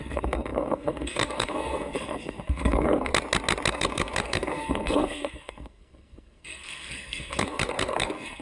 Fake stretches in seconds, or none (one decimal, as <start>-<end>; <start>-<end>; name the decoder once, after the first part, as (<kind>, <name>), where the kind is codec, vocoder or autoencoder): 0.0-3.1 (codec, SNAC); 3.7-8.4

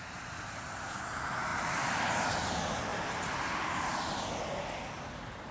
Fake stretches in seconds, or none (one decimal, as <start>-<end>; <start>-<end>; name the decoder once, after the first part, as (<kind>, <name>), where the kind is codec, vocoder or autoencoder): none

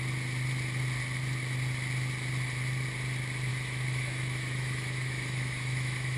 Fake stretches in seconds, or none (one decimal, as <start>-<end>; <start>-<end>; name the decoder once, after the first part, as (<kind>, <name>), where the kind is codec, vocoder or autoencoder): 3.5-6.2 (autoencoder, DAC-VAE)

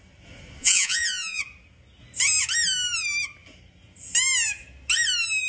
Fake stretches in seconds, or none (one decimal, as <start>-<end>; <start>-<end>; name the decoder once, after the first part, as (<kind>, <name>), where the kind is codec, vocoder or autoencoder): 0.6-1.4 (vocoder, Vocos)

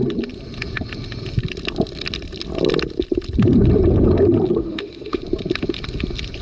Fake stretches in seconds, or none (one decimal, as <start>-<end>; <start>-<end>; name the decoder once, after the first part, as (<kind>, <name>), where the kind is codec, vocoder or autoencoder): 4.6-5.2 (autoencoder, DAC-VAE)

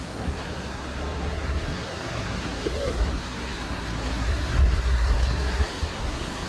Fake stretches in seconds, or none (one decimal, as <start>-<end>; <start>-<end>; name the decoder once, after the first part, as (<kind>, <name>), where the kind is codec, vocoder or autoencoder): 0.0-6.5 (codec, SNAC)

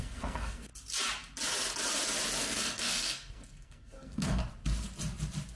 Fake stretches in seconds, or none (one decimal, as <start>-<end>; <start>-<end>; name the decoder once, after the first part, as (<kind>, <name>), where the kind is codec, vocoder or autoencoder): 0.0-0.7 (codec, SNAC); 2.4-4.4

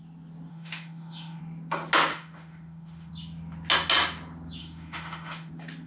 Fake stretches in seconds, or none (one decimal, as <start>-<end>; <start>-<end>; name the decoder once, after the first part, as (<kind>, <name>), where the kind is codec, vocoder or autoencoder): 0.5-1.4 (autoencoder, DAC-VAE); 2.1-3.1; 4.6-5.5